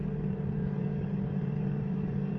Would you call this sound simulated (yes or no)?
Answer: yes